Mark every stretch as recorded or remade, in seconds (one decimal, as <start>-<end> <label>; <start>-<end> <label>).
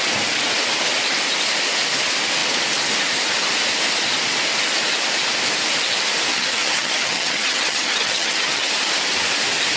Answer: 0.0-6.3 recorded; 6.3-8.7 remade; 8.7-9.8 recorded